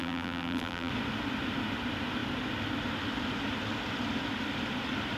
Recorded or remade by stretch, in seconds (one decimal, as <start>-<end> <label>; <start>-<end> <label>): 0.0-0.9 remade; 0.9-5.2 recorded